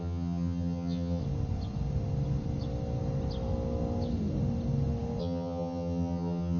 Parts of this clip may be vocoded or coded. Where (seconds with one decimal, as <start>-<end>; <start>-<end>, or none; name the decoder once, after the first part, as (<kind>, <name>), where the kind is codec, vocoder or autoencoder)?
0.0-1.2 (vocoder, HiFi-GAN); 5.2-6.6